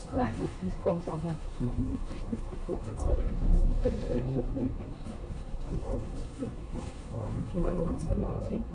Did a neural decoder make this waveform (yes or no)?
yes